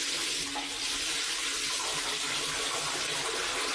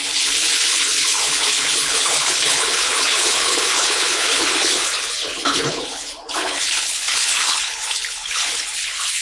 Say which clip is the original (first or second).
first